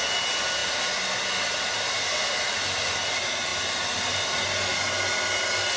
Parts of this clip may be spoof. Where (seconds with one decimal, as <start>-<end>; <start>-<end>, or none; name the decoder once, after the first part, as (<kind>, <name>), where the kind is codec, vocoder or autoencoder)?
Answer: none